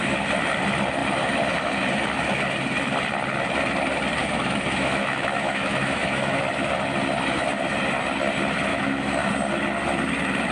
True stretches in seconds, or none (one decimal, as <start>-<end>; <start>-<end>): 0.0-4.2; 6.4-8.7; 9.3-10.5